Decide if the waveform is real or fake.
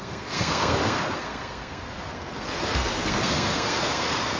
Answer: fake